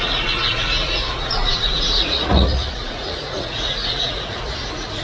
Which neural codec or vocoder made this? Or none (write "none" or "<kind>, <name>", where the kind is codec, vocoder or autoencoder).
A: vocoder, Vocos